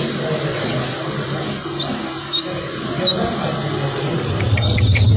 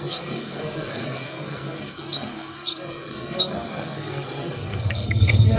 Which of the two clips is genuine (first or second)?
first